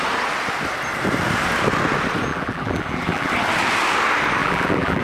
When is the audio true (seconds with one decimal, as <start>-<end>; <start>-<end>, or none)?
0.0-2.3; 3.3-4.4